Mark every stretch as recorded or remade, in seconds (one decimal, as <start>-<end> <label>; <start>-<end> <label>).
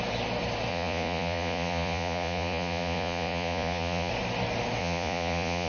0.0-0.7 recorded; 0.7-4.1 remade; 4.1-4.8 recorded; 4.8-5.7 remade